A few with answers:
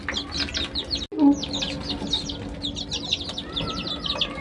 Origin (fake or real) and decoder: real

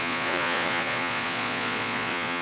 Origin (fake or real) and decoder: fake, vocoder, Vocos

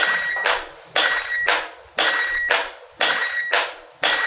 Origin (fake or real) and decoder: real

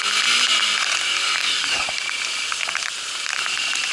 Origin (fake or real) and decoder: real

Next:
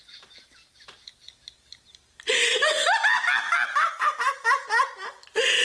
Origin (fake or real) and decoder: real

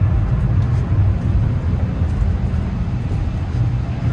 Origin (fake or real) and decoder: real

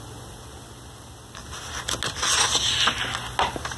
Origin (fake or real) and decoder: real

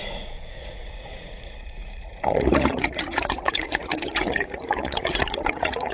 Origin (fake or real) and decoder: fake, vocoder, Vocos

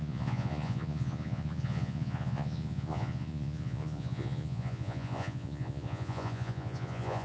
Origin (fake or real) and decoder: fake, vocoder, Vocos